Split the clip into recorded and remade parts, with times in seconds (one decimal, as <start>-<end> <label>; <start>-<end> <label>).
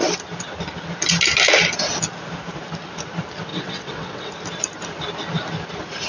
0.0-3.5 recorded; 3.5-4.3 remade; 4.3-6.1 recorded